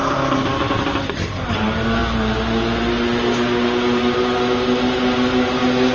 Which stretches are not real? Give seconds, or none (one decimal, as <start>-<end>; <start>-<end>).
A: none